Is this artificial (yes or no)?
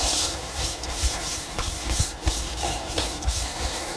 yes